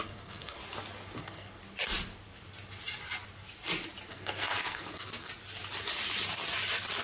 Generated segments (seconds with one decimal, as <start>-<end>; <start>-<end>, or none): 0.0-0.6; 1.2-1.6; 4.1-5.3